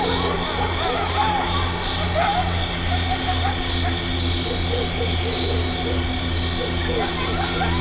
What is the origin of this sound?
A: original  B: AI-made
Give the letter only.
A